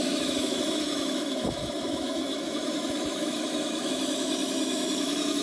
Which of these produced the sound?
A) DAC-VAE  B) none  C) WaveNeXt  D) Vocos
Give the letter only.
A